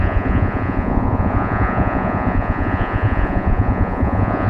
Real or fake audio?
fake